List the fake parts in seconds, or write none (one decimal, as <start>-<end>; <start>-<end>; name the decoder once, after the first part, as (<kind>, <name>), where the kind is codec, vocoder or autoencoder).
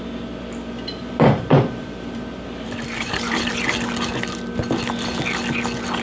1.0-3.5 (vocoder, BigVGAN v2)